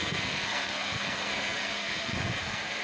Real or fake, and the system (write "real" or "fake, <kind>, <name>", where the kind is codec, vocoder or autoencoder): fake, codec, SNAC